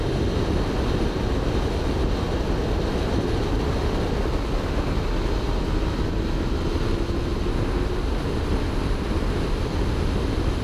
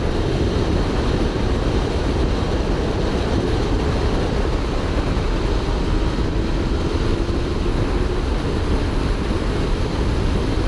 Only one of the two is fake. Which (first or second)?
second